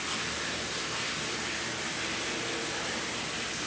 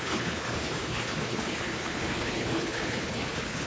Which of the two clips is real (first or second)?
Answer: first